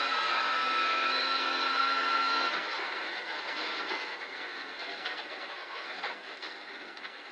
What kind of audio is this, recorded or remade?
remade